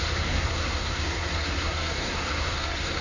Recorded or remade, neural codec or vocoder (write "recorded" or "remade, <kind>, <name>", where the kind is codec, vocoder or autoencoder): remade, codec, SNAC